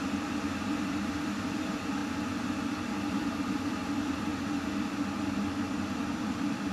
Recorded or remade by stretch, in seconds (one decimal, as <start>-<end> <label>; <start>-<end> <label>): 0.0-2.0 remade; 2.0-3.1 recorded; 3.1-4.3 remade; 4.3-6.2 recorded; 6.2-6.7 remade